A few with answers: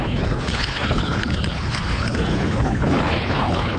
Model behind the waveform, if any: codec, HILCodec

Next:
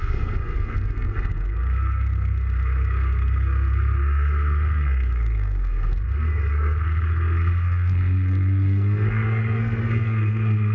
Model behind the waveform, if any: codec, SNAC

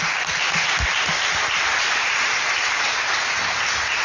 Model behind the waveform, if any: none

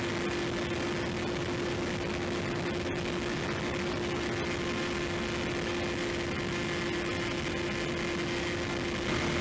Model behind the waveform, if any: none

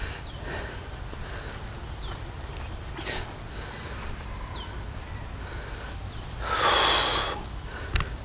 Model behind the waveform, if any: none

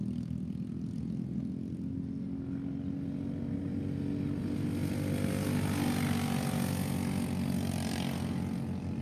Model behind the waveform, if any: none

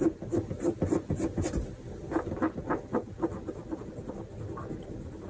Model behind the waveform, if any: none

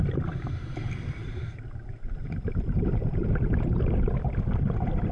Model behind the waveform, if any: vocoder, BigVGAN v2